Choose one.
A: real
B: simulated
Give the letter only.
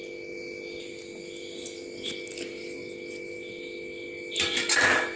A